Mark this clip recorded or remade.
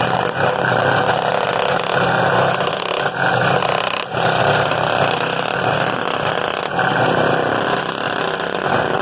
recorded